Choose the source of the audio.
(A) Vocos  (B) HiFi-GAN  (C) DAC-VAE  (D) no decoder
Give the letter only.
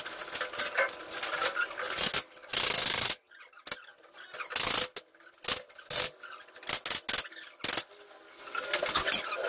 D